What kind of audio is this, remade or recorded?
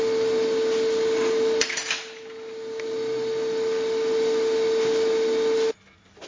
recorded